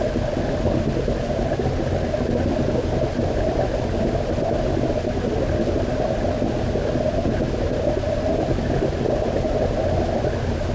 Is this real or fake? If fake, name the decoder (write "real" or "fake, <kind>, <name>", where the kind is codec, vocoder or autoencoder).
real